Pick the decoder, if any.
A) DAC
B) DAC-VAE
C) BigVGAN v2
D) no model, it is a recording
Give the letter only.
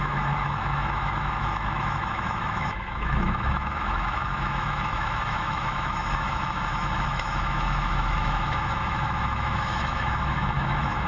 B